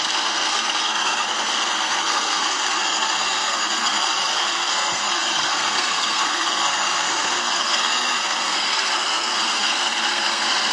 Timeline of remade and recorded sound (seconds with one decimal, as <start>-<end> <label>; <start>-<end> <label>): 0.0-10.7 remade